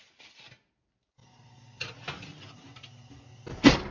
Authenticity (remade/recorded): recorded